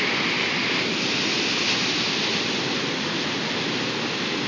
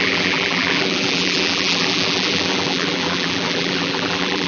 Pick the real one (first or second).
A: first